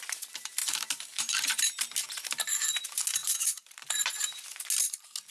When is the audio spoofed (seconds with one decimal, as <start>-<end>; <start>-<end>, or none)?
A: 0.6-1.6; 3.2-3.9